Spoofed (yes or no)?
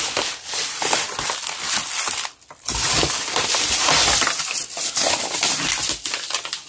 no